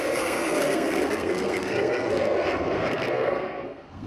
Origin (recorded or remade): remade